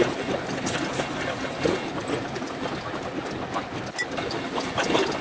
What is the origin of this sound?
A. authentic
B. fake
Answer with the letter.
A